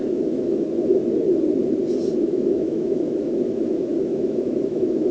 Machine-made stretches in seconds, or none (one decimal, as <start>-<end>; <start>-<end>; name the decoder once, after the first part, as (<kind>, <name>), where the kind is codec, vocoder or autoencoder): 0.0-1.0 (autoencoder, DAC-VAE); 2.2-5.1